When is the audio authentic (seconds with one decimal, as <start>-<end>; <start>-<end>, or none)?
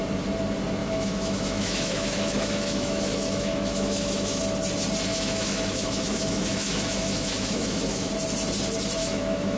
0.0-0.8; 4.4-5.1; 8.1-9.0